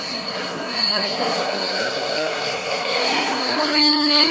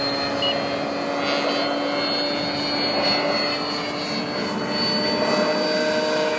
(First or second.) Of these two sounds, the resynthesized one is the first